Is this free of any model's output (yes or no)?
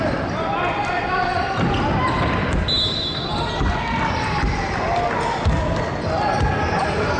yes